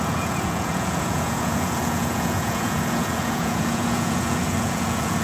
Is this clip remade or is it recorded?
remade